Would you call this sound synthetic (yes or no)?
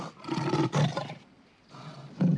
no